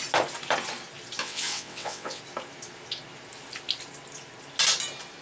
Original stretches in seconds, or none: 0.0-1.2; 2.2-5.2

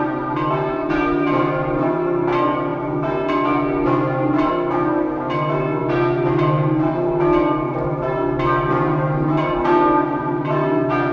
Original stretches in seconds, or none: 0.0-11.1

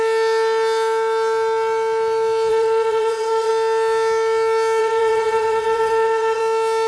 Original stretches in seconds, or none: 0.0-2.5; 3.5-4.8; 6.4-6.9

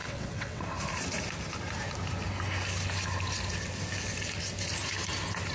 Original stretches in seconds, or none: 0.6-5.5